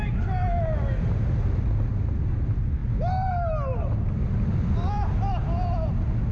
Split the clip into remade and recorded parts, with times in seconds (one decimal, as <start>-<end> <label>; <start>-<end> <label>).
0.0-6.3 recorded